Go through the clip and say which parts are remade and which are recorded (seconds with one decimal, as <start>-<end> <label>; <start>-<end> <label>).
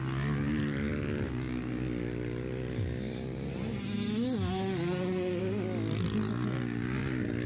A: 0.0-7.5 recorded